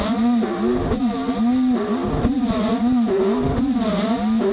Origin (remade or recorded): recorded